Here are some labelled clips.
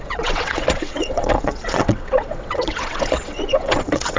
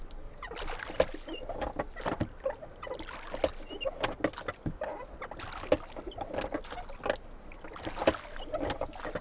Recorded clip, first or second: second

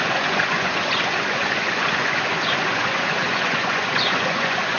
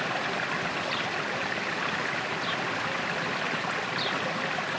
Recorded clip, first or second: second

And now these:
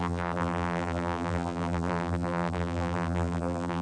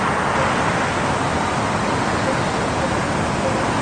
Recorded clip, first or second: second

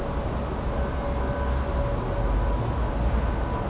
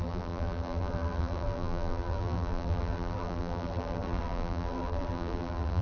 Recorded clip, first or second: first